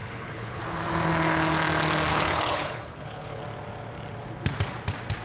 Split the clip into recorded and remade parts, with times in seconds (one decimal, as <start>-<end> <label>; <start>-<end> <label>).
0.0-0.6 remade; 0.6-2.1 recorded; 2.1-3.4 remade; 3.4-5.2 recorded